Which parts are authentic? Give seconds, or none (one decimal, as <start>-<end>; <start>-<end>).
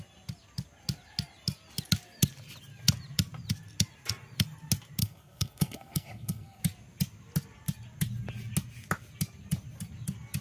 0.0-5.0; 6.6-10.4